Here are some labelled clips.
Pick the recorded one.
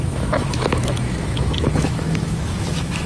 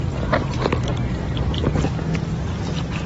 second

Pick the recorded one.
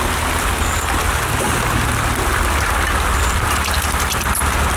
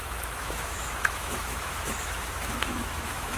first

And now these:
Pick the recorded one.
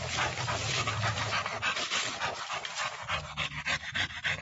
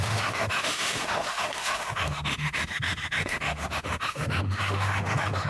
first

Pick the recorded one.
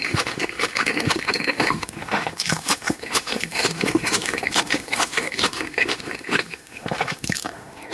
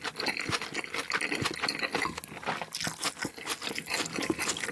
second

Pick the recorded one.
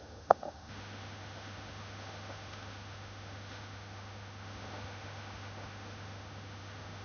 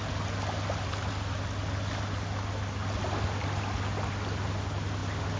second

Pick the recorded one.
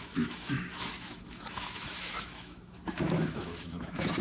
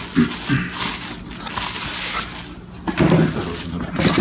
second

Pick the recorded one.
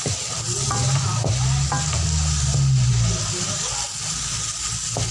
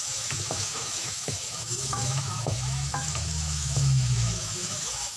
first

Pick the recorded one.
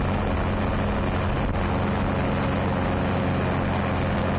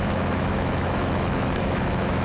first